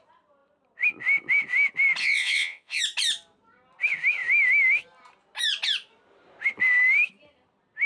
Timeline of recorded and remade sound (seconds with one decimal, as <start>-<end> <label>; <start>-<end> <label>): 0.0-2.0 recorded; 2.0-2.8 remade; 2.8-7.9 recorded